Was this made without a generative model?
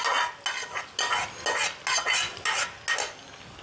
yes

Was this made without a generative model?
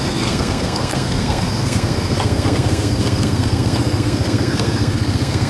no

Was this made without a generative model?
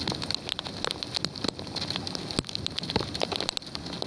yes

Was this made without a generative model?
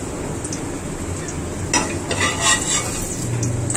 yes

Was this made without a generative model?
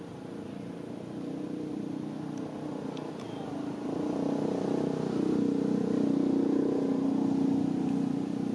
yes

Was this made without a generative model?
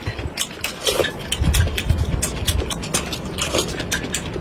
yes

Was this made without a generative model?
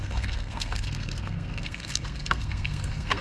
no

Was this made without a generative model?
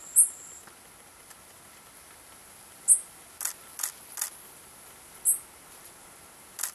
yes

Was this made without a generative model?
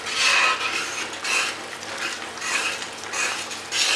yes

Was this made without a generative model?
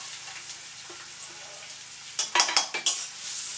yes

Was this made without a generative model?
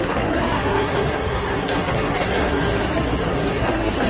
no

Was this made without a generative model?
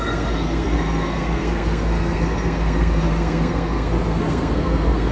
no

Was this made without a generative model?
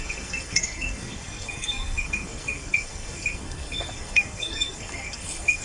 no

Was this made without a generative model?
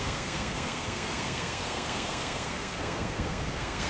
no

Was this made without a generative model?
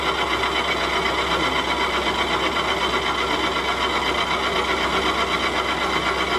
yes